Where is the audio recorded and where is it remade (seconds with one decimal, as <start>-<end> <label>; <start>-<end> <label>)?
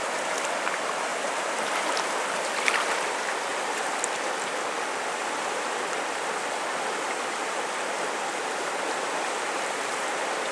0.0-1.1 remade; 1.1-1.6 recorded; 1.6-10.5 remade